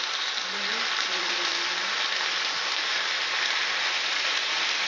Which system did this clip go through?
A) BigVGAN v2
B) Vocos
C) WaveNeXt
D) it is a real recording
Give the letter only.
A